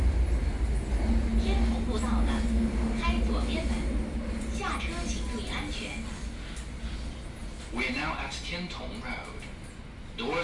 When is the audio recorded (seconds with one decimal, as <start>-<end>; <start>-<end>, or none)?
0.0-10.4